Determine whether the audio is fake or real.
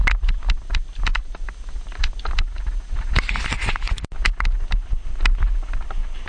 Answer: real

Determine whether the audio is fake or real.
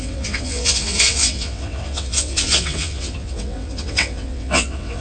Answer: fake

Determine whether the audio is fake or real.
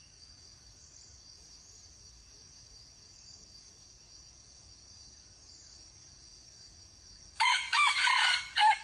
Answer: fake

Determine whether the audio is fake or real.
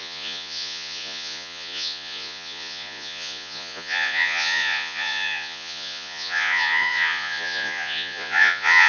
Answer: fake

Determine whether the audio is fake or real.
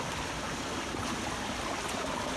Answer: real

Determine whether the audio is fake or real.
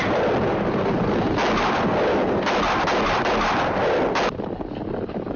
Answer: real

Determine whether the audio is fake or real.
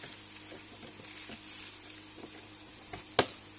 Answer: real